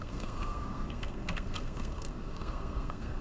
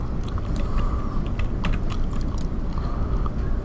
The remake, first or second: first